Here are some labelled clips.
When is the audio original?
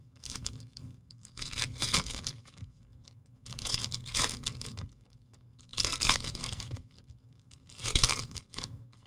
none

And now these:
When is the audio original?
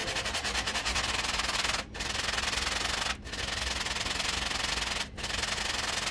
0.0-6.1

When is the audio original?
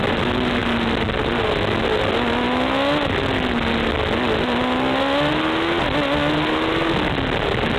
0.0-7.8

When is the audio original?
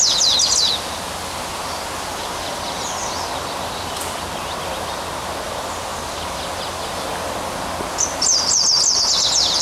0.0-9.6